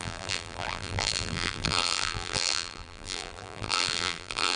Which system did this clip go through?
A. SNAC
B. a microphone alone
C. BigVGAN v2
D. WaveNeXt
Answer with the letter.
C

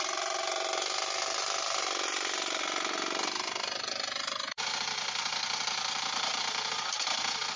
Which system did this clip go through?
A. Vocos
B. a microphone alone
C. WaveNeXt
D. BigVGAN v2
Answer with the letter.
D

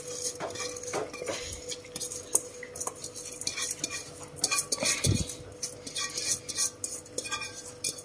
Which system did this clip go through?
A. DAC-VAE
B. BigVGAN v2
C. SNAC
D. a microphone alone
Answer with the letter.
D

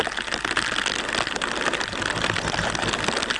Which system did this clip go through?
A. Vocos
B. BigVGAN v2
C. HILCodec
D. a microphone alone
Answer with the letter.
D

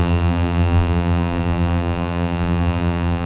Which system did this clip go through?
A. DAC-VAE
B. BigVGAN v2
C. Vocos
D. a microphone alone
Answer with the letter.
B